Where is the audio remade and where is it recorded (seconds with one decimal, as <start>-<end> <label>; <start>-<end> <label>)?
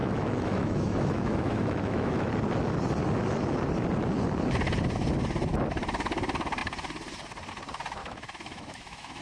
0.0-2.3 remade; 2.3-8.0 recorded; 8.0-9.2 remade